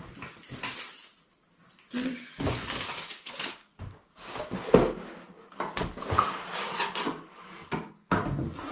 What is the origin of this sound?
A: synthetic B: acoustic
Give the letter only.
B